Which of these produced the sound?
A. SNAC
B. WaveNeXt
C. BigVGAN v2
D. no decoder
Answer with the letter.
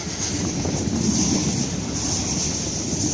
D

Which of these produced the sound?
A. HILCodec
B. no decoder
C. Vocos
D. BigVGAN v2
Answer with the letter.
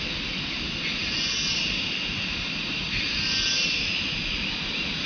D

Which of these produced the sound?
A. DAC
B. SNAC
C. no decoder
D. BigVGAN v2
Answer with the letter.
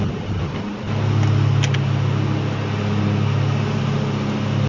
C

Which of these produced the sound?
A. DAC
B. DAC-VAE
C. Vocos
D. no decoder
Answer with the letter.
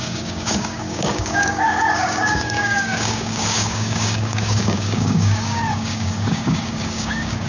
A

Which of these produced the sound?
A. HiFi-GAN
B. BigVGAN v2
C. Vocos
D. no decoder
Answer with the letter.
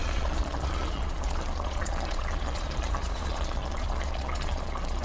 C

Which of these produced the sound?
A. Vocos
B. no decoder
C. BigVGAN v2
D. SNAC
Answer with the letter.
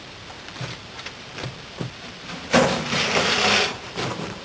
C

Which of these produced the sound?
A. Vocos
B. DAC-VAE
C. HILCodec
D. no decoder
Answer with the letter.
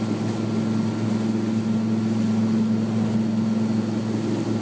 D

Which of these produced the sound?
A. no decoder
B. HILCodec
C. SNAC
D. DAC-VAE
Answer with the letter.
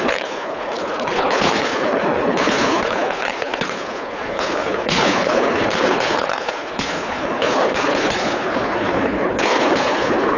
B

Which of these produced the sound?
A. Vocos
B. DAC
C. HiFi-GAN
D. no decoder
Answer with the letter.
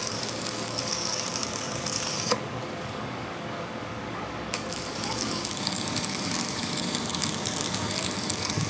B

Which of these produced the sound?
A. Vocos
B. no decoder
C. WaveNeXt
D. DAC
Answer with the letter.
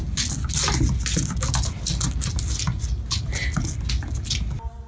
B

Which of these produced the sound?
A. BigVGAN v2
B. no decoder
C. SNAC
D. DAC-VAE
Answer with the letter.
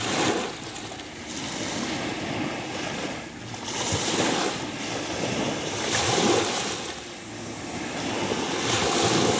B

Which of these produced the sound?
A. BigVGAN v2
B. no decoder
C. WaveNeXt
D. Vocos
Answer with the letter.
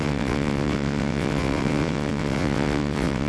C